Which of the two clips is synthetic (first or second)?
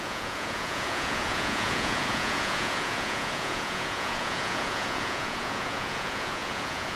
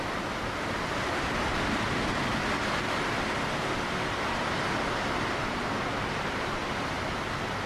first